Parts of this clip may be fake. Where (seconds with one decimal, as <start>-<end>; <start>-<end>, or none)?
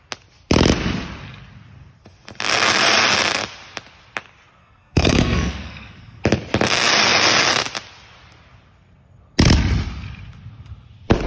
4.6-6.2